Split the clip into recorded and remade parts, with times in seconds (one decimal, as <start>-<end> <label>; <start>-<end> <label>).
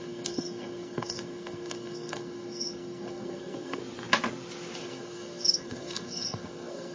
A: 0.0-3.8 remade; 3.8-4.8 recorded; 4.8-6.9 remade